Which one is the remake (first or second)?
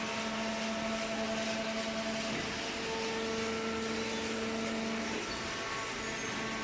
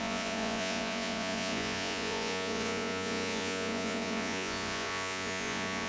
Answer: second